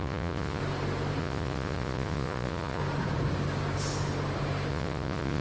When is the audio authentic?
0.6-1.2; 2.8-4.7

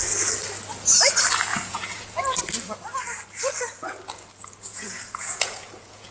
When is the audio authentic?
0.0-1.5; 2.2-4.7

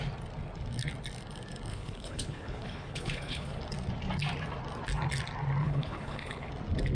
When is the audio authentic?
0.0-1.7; 3.6-5.6; 6.5-6.9